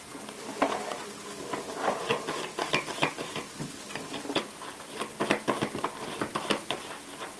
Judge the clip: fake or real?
real